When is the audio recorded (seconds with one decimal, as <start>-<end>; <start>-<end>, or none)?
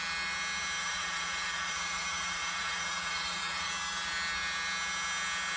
0.0-0.8; 3.7-5.6